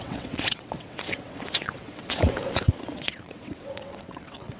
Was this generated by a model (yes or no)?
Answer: yes